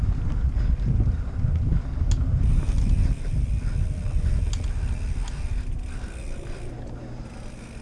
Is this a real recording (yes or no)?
yes